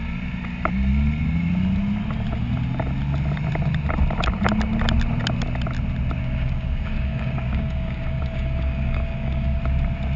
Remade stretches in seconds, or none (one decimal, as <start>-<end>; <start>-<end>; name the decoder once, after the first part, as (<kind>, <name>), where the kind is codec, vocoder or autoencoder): 6.2-9.6 (codec, DAC)

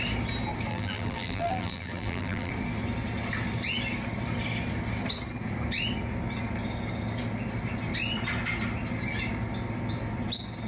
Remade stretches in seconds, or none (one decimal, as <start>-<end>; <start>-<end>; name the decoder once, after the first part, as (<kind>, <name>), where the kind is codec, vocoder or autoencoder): 0.7-2.5 (vocoder, BigVGAN v2)

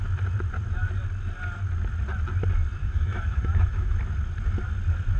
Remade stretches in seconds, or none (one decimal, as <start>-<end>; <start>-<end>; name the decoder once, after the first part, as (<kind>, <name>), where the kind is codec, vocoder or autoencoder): 2.8-4.0 (autoencoder, DAC-VAE)

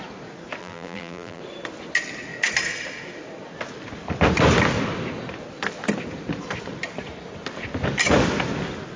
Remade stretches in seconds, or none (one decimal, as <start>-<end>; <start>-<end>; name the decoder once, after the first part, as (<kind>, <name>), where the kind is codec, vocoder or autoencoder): 0.6-1.4 (vocoder, BigVGAN v2)

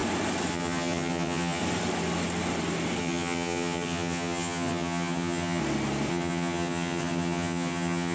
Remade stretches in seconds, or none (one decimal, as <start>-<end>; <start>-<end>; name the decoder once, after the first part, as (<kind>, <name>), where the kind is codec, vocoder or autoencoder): 0.5-1.6 (vocoder, HiFi-GAN); 3.0-5.6; 6.1-8.1

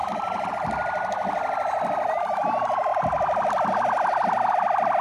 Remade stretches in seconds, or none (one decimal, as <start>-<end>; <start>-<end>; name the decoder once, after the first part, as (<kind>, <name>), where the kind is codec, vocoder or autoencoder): 0.0-0.5 (vocoder, BigVGAN v2)

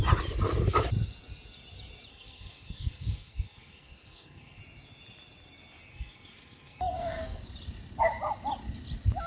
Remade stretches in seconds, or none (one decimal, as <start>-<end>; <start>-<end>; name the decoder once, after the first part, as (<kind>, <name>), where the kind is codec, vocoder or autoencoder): 2.1-4.6 (codec, SNAC); 5.9-7.4